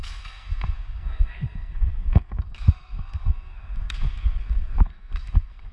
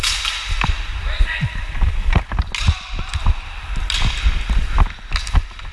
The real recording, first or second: second